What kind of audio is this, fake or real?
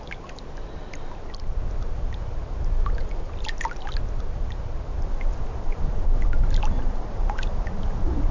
real